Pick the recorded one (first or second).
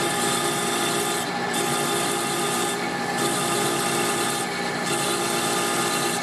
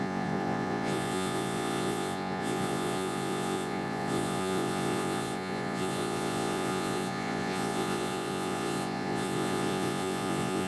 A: first